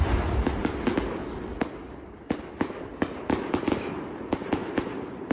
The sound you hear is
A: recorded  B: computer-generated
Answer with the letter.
A